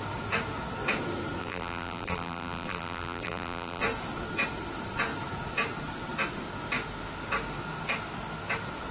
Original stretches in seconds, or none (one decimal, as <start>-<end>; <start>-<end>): 0.0-1.4; 3.8-8.9